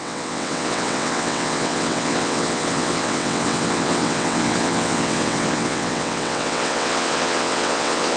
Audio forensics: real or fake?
fake